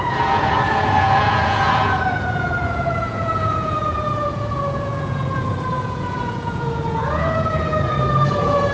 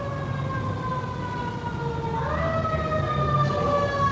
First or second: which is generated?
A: first